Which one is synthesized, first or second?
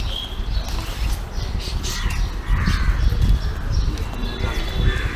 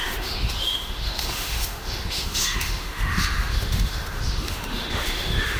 second